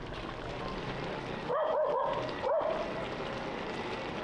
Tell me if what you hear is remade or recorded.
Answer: recorded